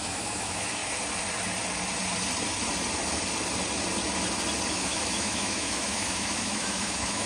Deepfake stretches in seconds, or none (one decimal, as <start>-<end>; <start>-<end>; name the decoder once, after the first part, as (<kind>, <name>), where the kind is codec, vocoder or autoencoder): 0.0-0.8 (autoencoder, DAC-VAE); 4.7-7.3